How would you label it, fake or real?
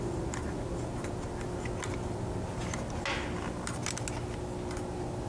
real